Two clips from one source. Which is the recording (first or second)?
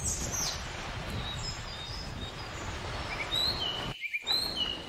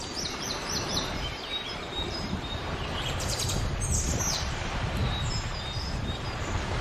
first